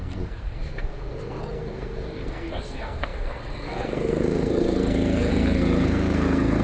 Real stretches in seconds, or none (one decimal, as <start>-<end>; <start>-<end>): none